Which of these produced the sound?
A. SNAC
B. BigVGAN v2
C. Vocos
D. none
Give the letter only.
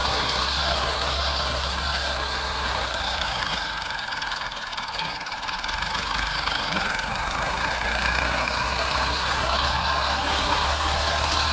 A